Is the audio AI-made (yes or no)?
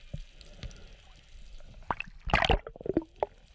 no